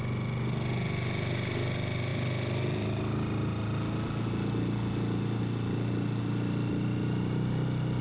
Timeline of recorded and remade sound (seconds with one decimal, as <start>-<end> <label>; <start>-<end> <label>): 0.0-8.0 recorded